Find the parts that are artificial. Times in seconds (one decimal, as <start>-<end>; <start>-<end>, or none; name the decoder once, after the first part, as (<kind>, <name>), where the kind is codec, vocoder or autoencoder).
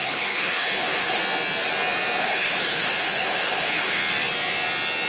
0.0-1.2 (codec, HILCodec); 2.2-4.0